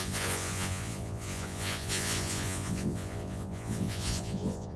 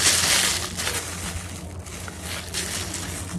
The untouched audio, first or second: second